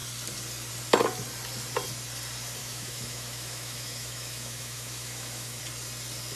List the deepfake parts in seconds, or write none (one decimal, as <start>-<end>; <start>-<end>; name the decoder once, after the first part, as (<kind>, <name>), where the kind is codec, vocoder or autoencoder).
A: 2.6-5.6 (autoencoder, DAC-VAE)